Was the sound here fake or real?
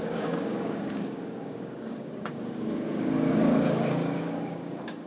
fake